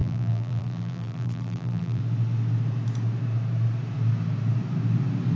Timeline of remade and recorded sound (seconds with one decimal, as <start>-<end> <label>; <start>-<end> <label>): 0.0-2.0 remade; 2.0-5.4 recorded